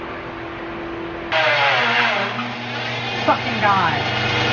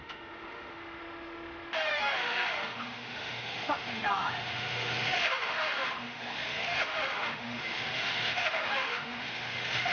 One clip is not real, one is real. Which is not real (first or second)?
second